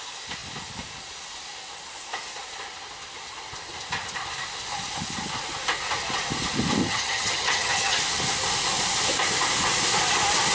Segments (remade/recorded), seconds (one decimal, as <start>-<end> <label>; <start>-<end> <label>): 0.0-6.8 recorded; 6.8-8.0 remade; 8.0-10.5 recorded